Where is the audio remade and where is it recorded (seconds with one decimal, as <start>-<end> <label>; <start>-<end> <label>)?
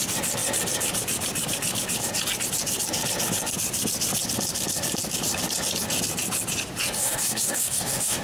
0.0-7.0 recorded; 7.0-8.2 remade